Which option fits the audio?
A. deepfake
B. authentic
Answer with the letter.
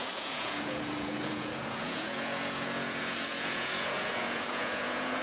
A